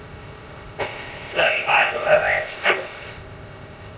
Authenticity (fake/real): fake